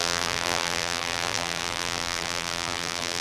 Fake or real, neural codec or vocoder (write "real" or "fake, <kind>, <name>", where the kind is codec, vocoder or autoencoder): fake, vocoder, BigVGAN v2